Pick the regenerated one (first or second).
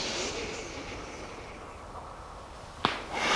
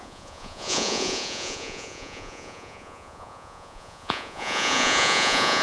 second